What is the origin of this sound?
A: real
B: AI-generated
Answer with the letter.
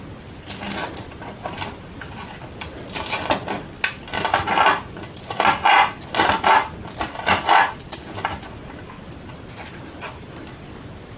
A